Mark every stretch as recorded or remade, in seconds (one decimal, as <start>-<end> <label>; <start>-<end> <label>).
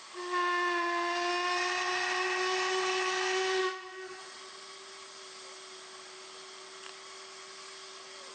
0.0-3.6 recorded; 3.6-4.2 remade; 4.2-8.3 recorded